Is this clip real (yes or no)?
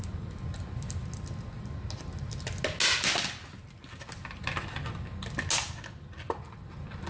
yes